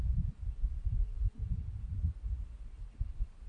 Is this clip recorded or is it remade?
recorded